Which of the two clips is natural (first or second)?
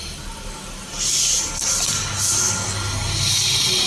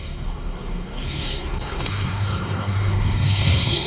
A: first